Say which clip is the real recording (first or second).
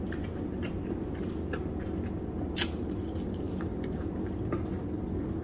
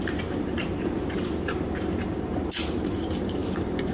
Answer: first